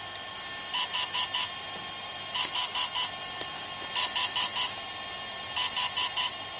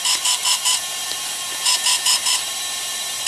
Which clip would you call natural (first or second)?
first